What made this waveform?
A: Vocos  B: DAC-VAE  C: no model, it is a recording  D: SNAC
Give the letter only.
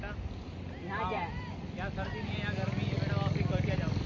C